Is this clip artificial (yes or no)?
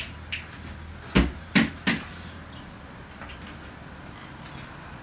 no